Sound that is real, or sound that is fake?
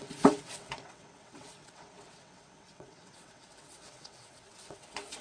fake